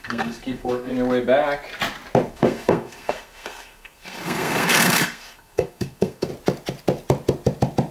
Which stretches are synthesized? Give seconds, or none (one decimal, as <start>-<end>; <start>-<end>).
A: 0.0-0.9; 2.3-6.3